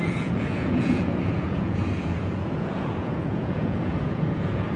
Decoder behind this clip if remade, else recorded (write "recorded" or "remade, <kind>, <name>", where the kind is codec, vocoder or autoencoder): remade, vocoder, Vocos